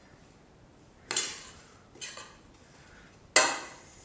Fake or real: real